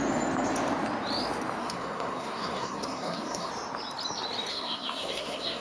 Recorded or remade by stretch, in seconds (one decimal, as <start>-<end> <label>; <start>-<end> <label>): 0.0-1.6 recorded; 1.6-3.5 remade; 3.5-4.5 recorded; 4.5-5.6 remade